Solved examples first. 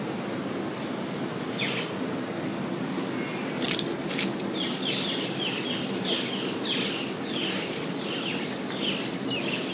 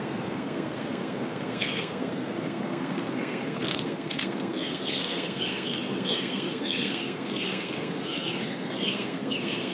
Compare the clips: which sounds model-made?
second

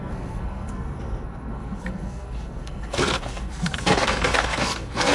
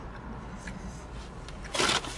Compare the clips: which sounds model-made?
first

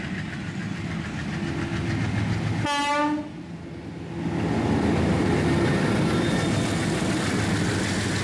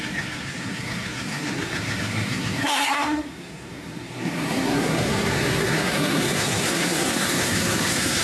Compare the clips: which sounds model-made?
second